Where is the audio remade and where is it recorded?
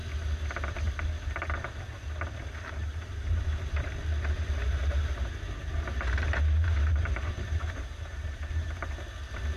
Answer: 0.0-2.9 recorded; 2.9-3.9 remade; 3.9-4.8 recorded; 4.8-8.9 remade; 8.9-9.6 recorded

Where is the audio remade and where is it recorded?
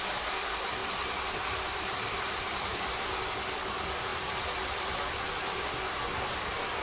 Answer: 0.0-0.8 recorded; 0.8-2.9 remade; 2.9-4.1 recorded; 4.1-5.7 remade; 5.7-6.8 recorded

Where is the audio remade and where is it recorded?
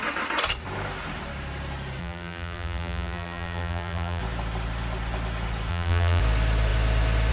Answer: 0.0-2.0 recorded; 2.0-4.2 remade; 4.2-5.7 recorded; 5.7-6.2 remade; 6.2-7.3 recorded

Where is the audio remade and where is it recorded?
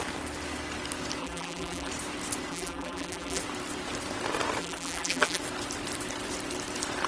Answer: 0.0-1.2 recorded; 1.2-1.9 remade; 1.9-2.5 recorded; 2.5-3.4 remade; 3.4-4.6 recorded; 4.6-5.4 remade; 5.4-7.1 recorded